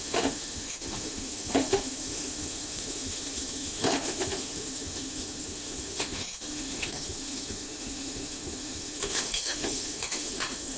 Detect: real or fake fake